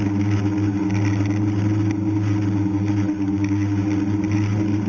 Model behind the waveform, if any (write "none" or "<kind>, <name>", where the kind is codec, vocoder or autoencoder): none